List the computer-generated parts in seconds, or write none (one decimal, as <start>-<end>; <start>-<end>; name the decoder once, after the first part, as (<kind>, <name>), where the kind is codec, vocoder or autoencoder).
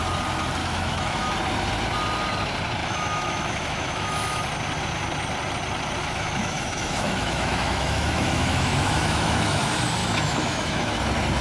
0.6-1.3 (autoencoder, DAC-VAE); 2.8-4.4; 6.0-9.6; 10.0-11.0